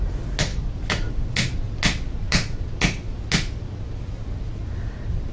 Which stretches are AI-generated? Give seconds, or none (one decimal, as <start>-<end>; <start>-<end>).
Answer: none